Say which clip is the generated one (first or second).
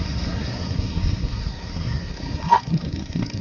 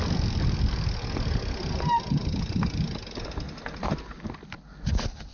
first